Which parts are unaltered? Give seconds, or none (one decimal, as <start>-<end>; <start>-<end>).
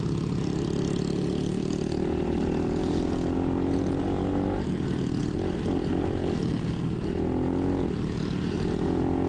0.0-9.3